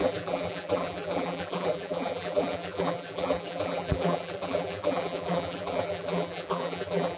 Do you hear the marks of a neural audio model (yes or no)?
yes